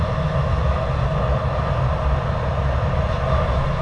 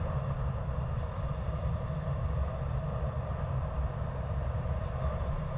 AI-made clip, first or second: second